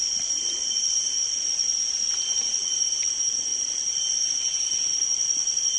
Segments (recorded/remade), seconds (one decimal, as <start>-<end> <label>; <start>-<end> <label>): 0.0-5.8 recorded